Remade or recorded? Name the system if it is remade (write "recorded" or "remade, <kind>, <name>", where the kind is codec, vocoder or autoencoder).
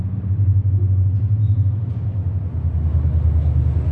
recorded